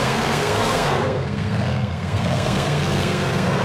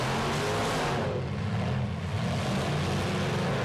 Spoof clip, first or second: first